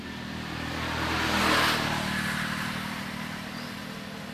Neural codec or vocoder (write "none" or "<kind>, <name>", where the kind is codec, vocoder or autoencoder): none